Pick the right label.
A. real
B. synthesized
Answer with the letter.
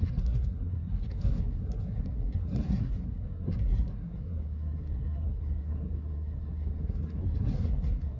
B